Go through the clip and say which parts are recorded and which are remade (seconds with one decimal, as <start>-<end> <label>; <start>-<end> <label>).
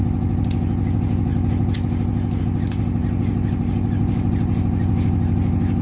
0.0-5.8 recorded